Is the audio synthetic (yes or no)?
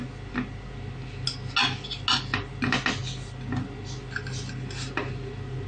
no